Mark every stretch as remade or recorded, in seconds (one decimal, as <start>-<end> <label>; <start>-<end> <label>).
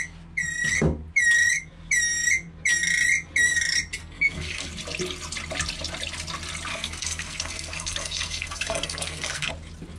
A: 0.0-4.0 recorded; 4.0-4.7 remade; 4.7-6.7 recorded; 6.7-9.5 remade; 9.5-10.0 recorded